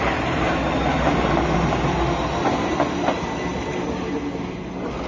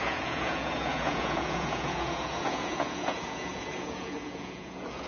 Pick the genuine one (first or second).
first